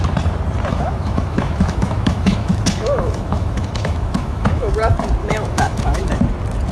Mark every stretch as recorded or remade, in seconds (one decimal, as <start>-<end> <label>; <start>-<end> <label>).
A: 0.0-0.7 recorded; 0.7-4.7 remade; 4.7-5.2 recorded; 5.2-6.1 remade; 6.1-6.7 recorded